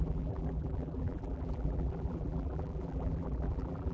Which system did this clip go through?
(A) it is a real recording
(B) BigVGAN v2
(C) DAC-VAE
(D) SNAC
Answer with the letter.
B